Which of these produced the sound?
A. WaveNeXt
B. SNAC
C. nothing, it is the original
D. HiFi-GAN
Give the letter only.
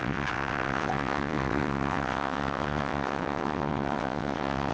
A